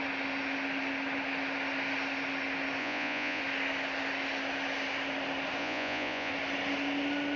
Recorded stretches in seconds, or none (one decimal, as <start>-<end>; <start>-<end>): 0.0-2.8; 3.4-5.6; 6.3-7.4